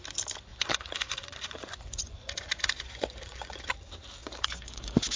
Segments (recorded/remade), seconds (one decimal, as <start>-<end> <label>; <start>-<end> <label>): 0.0-0.5 recorded; 0.5-3.6 remade; 3.6-4.2 recorded; 4.2-5.2 remade